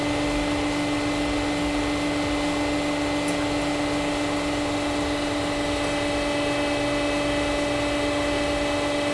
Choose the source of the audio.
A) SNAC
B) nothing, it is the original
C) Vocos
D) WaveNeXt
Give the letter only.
B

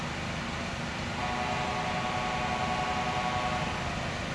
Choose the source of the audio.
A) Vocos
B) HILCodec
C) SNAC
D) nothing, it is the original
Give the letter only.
D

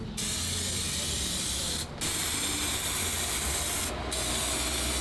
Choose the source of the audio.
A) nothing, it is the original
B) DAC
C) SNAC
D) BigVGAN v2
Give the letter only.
A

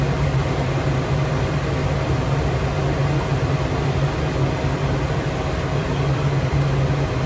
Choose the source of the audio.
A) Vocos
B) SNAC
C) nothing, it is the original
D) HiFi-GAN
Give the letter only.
C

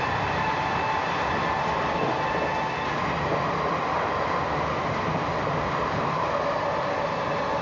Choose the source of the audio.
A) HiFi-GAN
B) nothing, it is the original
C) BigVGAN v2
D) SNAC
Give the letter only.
B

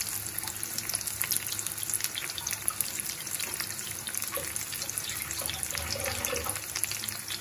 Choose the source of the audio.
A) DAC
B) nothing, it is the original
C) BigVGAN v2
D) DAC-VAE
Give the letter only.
B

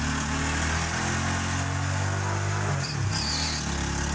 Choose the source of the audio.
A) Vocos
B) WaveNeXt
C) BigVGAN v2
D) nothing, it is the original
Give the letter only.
D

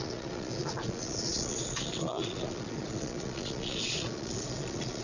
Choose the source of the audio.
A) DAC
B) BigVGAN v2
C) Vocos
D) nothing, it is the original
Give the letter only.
C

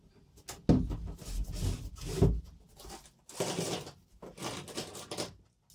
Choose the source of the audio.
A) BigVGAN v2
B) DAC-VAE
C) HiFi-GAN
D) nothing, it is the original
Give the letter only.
D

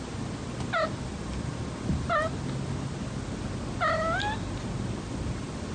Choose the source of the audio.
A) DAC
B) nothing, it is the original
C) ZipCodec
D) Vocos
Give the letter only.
B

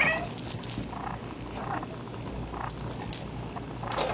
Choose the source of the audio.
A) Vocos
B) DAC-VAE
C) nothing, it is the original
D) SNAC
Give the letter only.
C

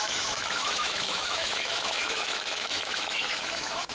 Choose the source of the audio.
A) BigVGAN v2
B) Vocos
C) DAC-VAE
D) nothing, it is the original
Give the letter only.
C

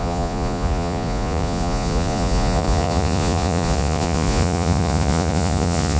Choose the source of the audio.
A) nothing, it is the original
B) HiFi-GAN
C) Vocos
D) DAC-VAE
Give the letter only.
C